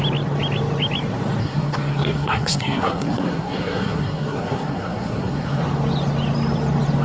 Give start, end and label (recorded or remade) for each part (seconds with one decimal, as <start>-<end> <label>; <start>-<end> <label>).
0.0-1.4 recorded; 1.4-5.6 remade; 5.6-7.0 recorded